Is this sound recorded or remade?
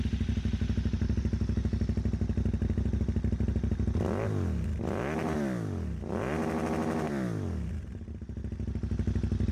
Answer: recorded